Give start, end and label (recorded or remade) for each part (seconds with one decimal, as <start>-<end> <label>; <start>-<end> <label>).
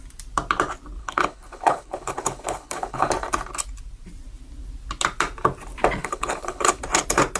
0.0-1.0 recorded; 1.0-3.1 remade; 3.1-6.0 recorded; 6.0-6.8 remade; 6.8-7.4 recorded